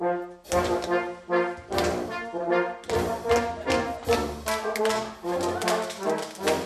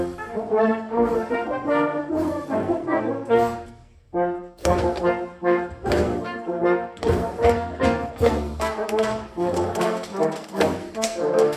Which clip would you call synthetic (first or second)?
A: second